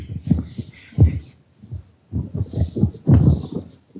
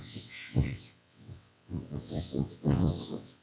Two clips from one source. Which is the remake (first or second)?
second